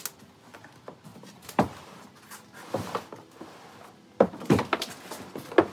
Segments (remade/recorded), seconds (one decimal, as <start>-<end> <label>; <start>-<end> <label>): 0.0-1.1 recorded; 1.1-4.3 remade; 4.3-5.7 recorded